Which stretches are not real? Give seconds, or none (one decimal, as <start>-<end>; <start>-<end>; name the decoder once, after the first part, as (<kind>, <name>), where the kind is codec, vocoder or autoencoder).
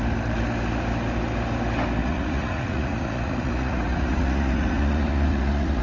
2.0-5.8 (vocoder, Vocos)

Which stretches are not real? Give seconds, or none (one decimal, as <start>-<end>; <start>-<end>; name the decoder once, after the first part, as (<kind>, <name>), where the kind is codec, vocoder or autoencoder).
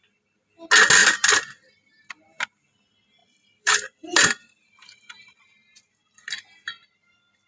1.0-2.1 (vocoder, BigVGAN v2); 3.2-7.5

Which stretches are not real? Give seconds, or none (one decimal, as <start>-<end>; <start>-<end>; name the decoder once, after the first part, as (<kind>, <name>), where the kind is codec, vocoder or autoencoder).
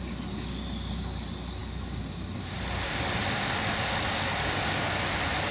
none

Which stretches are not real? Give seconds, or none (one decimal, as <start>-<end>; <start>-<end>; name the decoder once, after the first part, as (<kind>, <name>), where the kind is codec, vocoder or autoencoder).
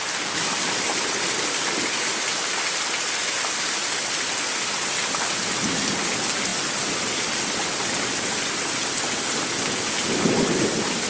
none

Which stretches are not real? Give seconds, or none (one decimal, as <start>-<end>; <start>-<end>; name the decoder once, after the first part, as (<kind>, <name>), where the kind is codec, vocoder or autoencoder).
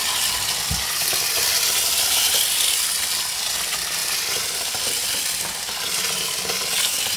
4.0-4.8 (vocoder, BigVGAN v2)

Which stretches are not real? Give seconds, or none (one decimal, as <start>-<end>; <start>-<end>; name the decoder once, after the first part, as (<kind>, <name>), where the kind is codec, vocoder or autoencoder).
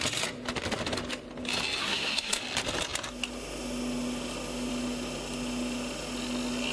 1.8-2.4 (codec, SNAC)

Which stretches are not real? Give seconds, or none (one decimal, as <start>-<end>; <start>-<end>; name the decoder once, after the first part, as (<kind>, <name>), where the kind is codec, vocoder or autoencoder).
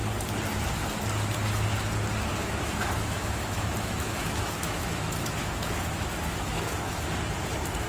2.4-7.0 (autoencoder, DAC-VAE)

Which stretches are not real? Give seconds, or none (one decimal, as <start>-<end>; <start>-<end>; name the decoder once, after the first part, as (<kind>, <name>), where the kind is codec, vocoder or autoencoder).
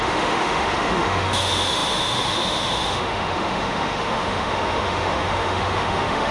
0.0-6.3 (autoencoder, DAC-VAE)